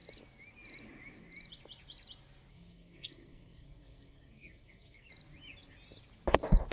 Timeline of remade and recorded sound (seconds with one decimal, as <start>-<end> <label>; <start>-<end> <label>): 0.0-2.5 recorded; 2.5-5.1 remade; 5.1-6.7 recorded